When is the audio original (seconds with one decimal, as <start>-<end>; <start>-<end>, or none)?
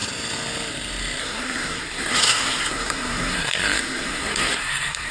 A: 0.0-1.2